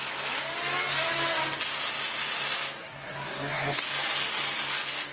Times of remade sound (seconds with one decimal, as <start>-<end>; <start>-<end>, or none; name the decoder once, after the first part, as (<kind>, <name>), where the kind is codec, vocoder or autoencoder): 2.8-3.8 (codec, SNAC)